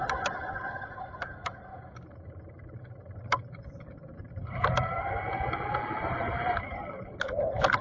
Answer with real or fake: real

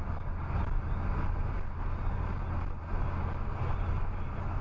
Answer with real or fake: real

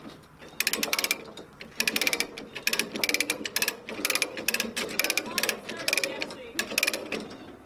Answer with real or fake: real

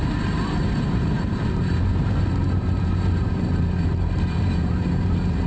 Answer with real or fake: fake